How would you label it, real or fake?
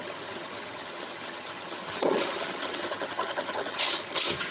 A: fake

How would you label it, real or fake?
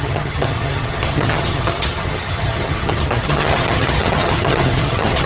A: fake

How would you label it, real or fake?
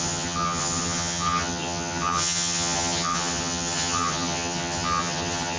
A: fake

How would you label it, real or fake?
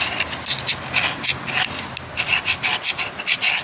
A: real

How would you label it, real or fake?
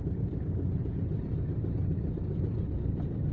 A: real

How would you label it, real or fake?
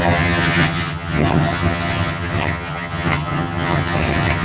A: fake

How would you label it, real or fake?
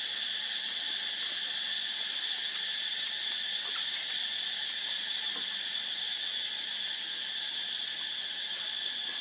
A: real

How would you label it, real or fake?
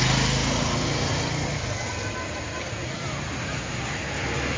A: real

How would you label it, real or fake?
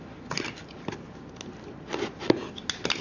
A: real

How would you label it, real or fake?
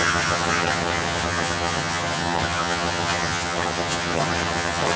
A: fake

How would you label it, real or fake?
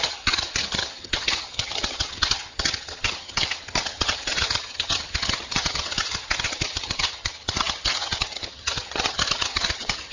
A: fake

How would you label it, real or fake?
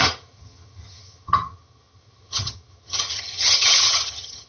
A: fake